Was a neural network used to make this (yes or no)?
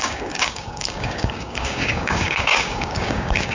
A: yes